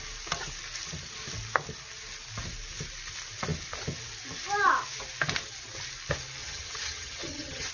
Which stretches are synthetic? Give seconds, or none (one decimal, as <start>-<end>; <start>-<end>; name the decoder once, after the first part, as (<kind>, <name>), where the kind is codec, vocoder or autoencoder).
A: 6.4-7.7 (vocoder, HiFi-GAN)